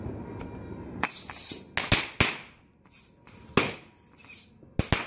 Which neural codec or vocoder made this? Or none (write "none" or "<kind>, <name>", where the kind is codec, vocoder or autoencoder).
none